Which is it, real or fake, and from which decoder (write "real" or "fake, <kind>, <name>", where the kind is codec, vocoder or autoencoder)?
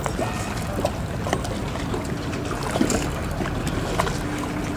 real